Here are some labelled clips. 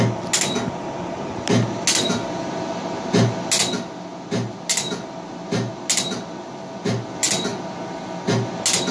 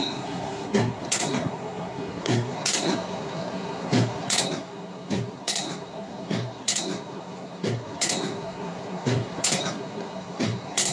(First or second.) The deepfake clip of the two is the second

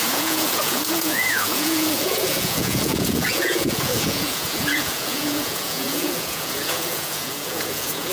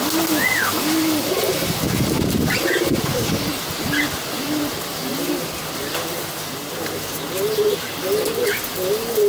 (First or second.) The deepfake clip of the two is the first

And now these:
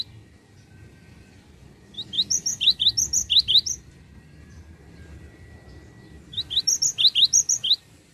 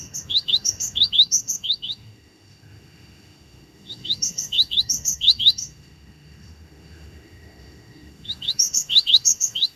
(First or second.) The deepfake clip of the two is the second